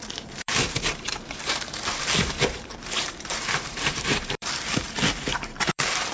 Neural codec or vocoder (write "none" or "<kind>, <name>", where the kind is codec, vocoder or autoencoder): vocoder, BigVGAN v2